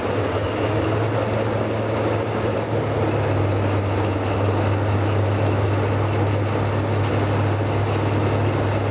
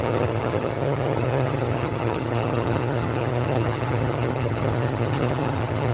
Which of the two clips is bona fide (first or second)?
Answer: first